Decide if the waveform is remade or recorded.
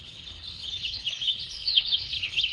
remade